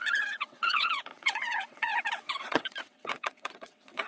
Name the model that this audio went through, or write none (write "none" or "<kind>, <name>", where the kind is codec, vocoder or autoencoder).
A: vocoder, WaveNeXt